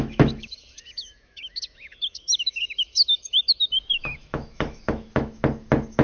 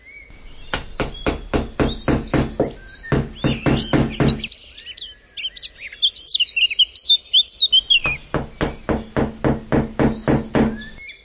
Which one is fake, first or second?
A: first